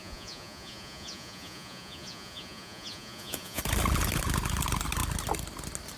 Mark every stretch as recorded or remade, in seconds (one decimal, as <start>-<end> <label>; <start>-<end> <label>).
0.0-3.6 remade; 3.6-6.0 recorded

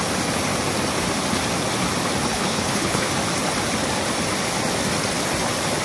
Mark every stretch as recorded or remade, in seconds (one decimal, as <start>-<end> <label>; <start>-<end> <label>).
0.0-2.3 recorded; 2.3-3.1 remade; 3.1-5.8 recorded

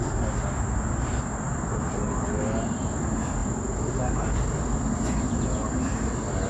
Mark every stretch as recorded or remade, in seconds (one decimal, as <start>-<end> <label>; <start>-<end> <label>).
0.0-6.5 recorded

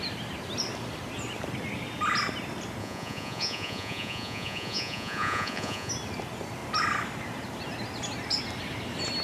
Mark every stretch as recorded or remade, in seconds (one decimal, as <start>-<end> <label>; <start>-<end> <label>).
0.0-2.8 recorded; 2.8-5.9 remade; 5.9-9.2 recorded

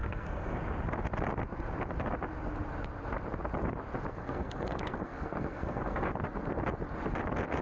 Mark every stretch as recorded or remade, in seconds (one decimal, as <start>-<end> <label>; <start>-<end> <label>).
0.0-0.6 remade; 0.6-4.1 recorded; 4.1-6.1 remade; 6.1-7.6 recorded

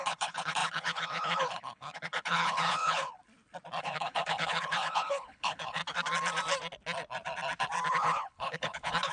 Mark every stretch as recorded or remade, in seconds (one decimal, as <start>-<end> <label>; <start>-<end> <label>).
0.0-3.2 remade; 3.2-3.8 recorded; 3.8-5.8 remade; 5.8-7.9 recorded; 7.9-9.1 remade

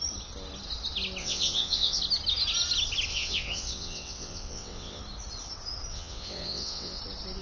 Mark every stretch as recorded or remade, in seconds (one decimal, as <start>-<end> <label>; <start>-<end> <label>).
0.0-1.2 recorded; 1.2-2.0 remade; 2.0-3.1 recorded; 3.1-5.0 remade; 5.0-5.9 recorded; 5.9-7.0 remade; 7.0-7.4 recorded